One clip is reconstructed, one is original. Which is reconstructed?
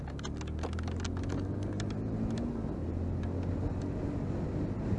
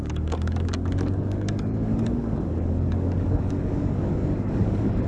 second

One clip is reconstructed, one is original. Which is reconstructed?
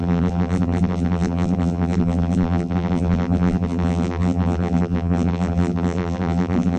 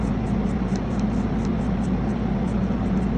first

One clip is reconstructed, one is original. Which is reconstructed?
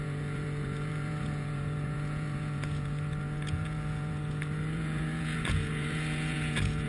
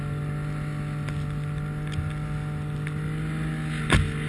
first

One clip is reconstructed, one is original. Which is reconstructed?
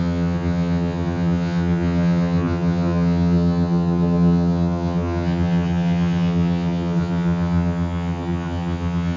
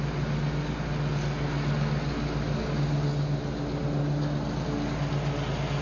first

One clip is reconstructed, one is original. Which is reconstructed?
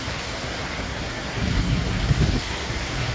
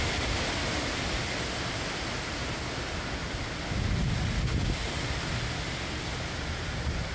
first